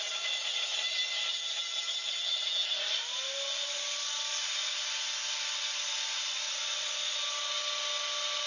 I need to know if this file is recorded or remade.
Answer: recorded